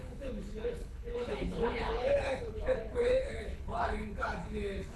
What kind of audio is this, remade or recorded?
remade